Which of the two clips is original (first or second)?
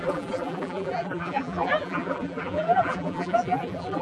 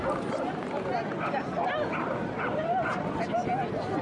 second